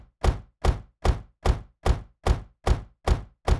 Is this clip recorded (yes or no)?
yes